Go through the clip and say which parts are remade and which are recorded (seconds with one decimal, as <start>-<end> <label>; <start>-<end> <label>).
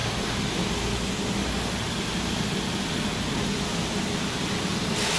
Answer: 0.0-0.7 remade; 0.7-4.7 recorded; 4.7-5.2 remade